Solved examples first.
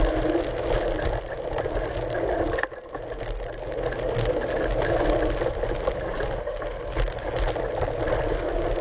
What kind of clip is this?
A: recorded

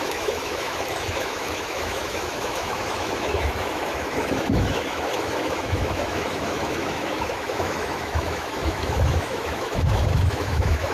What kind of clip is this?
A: remade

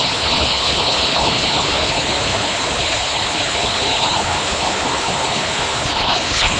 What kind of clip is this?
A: remade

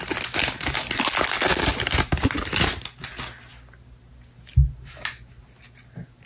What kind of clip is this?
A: recorded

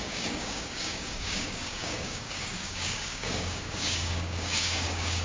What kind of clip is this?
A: remade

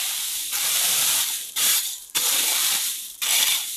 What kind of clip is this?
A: remade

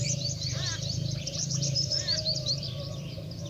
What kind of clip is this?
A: remade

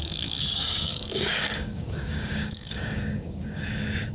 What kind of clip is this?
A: remade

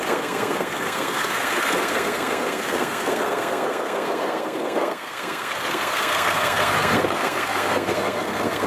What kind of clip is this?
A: remade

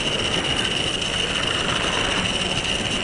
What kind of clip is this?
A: recorded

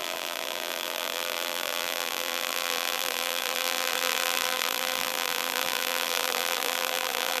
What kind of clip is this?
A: remade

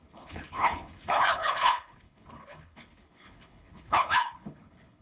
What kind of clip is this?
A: remade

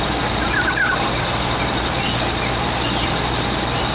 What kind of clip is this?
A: recorded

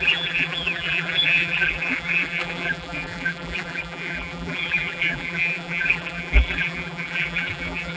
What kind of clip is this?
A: remade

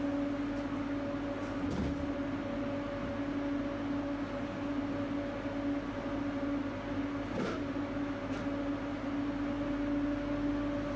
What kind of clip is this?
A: recorded